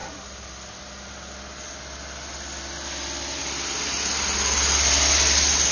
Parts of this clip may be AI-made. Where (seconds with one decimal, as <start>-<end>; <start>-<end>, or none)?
none